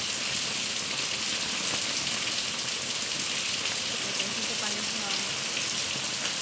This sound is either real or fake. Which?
real